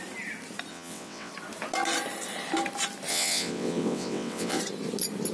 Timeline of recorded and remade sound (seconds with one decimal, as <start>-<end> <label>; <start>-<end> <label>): 0.0-0.7 recorded; 0.7-1.3 remade; 1.3-3.1 recorded; 3.1-4.6 remade; 4.6-5.3 recorded